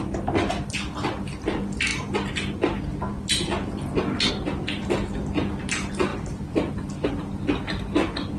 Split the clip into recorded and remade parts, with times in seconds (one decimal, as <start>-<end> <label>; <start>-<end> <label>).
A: 0.0-6.1 recorded; 6.1-7.1 remade; 7.1-8.4 recorded